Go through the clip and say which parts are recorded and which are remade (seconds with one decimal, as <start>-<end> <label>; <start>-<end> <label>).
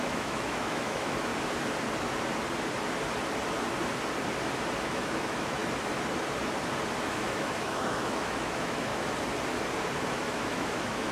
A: 0.0-1.3 remade; 1.3-4.8 recorded; 4.8-5.6 remade; 5.6-7.1 recorded; 7.1-8.9 remade; 8.9-10.1 recorded; 10.1-11.1 remade